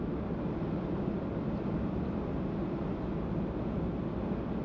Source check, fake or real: real